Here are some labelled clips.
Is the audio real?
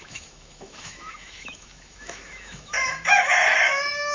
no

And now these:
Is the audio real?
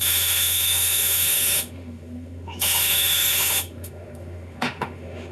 no